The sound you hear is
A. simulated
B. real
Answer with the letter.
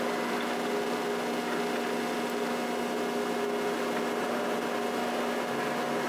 B